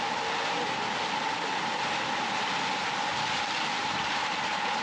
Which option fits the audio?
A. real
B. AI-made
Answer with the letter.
A